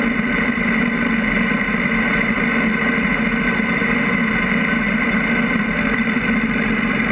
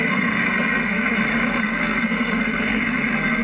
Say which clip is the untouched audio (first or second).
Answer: first